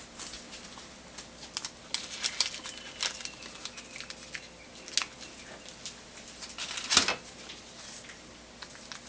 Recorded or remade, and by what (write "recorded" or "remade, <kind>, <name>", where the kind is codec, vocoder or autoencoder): recorded